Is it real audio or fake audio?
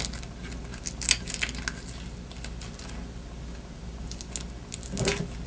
real